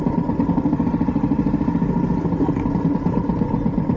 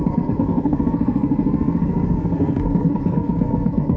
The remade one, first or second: second